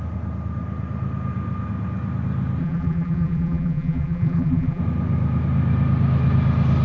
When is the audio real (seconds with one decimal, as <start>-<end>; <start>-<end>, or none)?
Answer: 0.0-2.6; 4.8-6.8